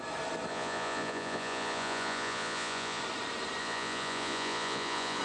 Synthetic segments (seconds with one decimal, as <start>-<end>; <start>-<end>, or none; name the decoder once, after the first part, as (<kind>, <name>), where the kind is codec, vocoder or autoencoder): 0.5-3.0 (vocoder, Vocos); 3.6-5.2